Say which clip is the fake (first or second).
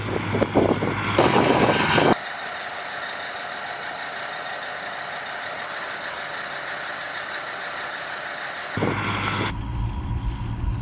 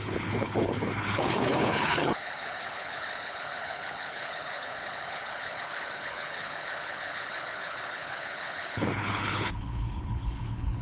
second